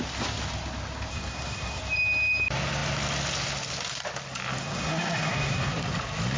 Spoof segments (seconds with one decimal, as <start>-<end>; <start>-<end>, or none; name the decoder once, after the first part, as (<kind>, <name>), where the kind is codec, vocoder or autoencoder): 1.1-1.8 (codec, SNAC); 4.6-5.7

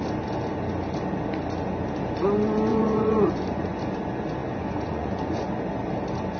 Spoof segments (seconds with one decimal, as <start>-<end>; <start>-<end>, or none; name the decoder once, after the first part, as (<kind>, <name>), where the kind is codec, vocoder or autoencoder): 2.7-3.8 (vocoder, Vocos); 4.4-5.5

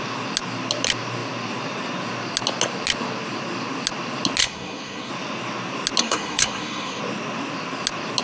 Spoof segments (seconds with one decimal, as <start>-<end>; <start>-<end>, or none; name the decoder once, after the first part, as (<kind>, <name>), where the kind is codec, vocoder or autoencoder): 4.4-5.1 (codec, SNAC); 6.0-7.0

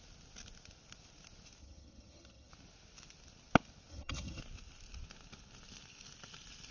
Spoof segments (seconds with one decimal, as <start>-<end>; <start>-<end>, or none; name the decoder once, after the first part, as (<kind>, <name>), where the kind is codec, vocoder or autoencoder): 1.6-2.5 (vocoder, HiFi-GAN); 3.9-4.4

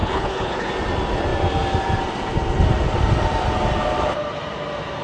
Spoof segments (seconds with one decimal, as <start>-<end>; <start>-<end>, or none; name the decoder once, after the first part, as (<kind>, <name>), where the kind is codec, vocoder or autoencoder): 0.0-0.7 (codec, HILCodec)